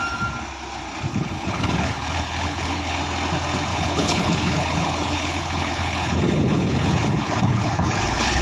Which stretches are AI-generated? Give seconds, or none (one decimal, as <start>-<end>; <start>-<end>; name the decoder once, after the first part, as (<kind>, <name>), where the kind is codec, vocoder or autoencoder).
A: 1.1-3.0 (codec, HILCodec); 3.7-8.4